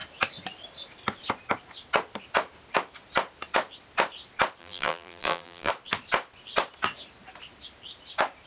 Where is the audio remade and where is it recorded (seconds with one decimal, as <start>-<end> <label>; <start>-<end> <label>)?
0.0-4.6 recorded; 4.6-5.7 remade; 5.7-8.5 recorded